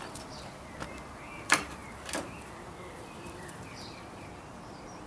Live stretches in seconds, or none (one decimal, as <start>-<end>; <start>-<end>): 0.0-5.1